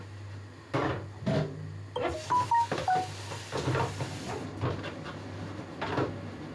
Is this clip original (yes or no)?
yes